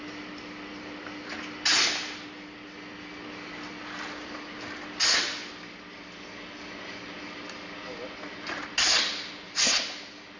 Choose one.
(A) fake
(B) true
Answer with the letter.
B